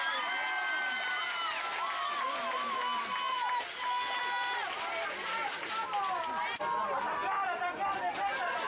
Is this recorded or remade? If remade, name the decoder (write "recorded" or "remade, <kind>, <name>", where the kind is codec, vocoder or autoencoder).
recorded